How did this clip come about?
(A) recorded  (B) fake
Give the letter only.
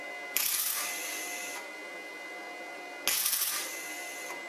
A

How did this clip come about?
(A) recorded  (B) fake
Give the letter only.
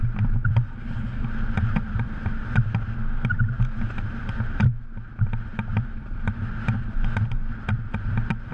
A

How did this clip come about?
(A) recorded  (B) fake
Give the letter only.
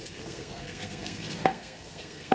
B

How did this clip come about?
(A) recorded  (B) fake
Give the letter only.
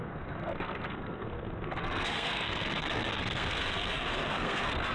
B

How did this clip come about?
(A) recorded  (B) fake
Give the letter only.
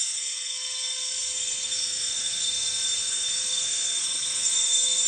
B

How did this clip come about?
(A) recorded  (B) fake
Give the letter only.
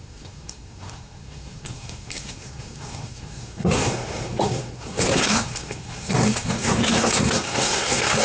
B